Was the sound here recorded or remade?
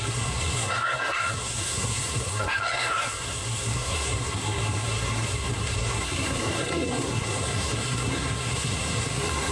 remade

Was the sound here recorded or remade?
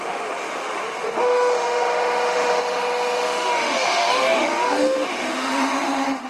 remade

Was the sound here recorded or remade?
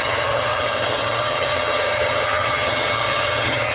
remade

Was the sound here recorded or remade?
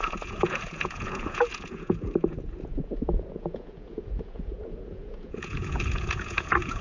remade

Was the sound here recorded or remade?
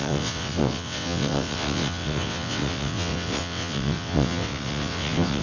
remade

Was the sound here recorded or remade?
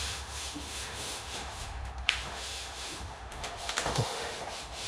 remade